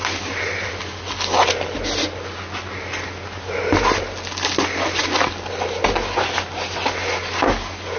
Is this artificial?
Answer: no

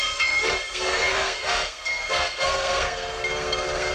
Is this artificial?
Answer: yes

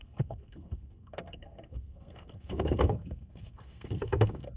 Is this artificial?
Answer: yes